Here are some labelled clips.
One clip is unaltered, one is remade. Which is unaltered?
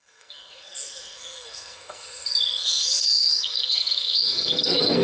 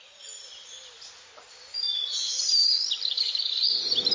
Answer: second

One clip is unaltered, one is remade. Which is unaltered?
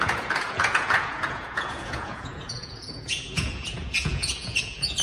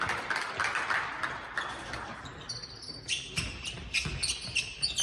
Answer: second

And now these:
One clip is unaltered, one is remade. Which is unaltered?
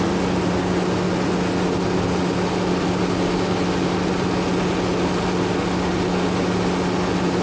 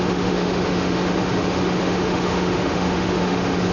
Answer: first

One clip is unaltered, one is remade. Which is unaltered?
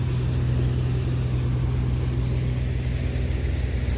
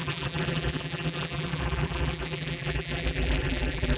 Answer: first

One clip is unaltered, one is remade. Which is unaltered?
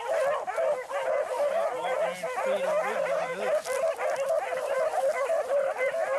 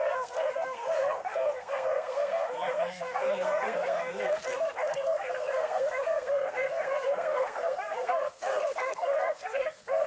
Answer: first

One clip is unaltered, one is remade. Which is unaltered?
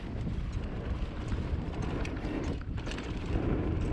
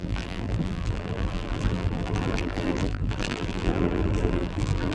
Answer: first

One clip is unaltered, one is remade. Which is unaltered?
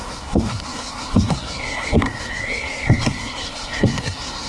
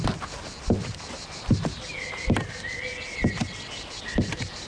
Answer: second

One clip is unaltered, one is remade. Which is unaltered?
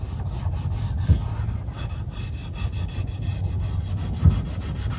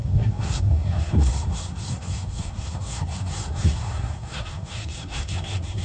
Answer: first